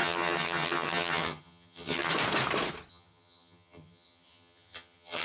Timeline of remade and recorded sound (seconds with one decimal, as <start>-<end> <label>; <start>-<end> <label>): 0.0-2.1 remade; 2.1-2.9 recorded; 2.9-5.2 remade